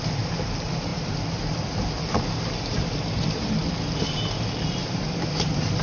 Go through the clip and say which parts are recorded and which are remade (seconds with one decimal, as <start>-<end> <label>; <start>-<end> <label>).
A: 0.0-5.8 remade